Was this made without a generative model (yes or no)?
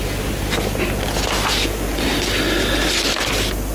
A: yes